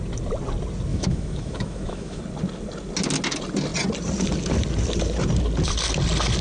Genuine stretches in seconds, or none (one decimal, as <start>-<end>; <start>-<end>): 0.0-0.9; 2.2-6.4